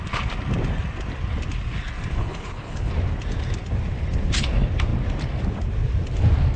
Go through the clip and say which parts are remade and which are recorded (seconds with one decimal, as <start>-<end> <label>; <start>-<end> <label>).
0.0-2.2 recorded; 2.2-2.9 remade; 2.9-6.6 recorded